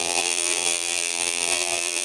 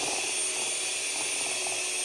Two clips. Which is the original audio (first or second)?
second